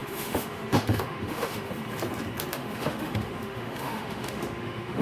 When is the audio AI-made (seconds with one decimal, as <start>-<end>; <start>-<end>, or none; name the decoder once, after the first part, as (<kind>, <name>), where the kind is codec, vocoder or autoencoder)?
0.0-1.7 (autoencoder, DAC-VAE); 2.5-5.0